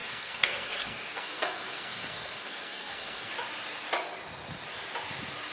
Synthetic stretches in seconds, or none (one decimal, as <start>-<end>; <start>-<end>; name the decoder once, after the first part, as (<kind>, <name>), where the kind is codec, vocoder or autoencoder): 0.0-3.3 (codec, SNAC)